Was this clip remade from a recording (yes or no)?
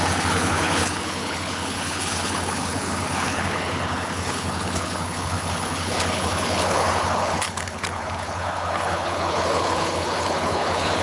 yes